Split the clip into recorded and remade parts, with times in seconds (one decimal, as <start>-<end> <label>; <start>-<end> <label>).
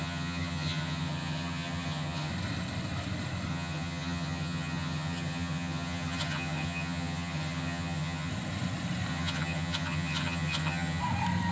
0.0-2.3 remade; 2.3-3.5 recorded; 3.5-8.3 remade; 8.3-9.1 recorded; 9.1-11.0 remade; 11.0-11.5 recorded